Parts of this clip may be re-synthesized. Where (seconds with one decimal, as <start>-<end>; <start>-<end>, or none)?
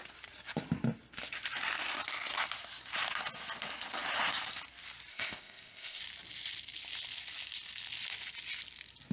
5.1-6.0